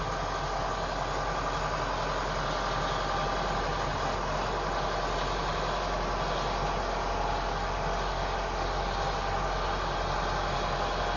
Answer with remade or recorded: recorded